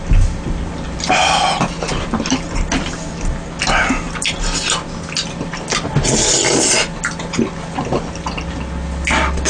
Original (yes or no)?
yes